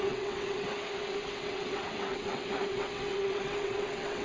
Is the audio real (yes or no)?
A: no